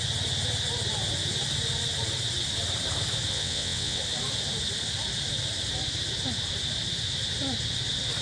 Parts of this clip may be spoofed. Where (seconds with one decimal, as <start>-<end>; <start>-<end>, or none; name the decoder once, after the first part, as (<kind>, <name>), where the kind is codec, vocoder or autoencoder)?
3.3-4.0 (vocoder, WaveNeXt)